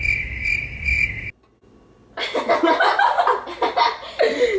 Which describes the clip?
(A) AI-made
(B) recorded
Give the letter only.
B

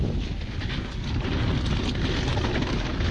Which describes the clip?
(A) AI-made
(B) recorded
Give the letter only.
B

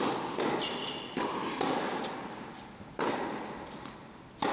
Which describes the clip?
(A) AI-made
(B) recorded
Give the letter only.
B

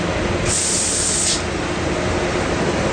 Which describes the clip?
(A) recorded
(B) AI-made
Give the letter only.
A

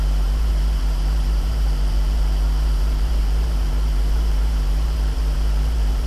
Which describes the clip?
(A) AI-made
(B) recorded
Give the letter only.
A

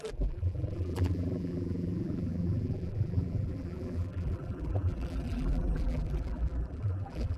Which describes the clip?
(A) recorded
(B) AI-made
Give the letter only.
B